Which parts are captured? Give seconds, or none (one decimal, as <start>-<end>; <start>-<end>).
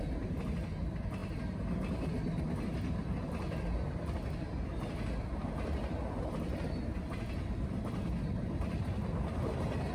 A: 0.0-9.9